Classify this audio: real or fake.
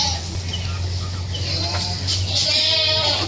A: real